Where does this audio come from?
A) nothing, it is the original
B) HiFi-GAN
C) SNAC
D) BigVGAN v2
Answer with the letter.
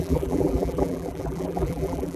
D